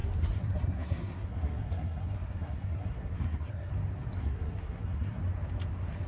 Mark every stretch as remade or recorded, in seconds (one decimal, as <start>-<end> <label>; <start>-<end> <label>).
0.0-3.7 remade; 3.7-4.2 recorded; 4.2-5.2 remade; 5.2-6.1 recorded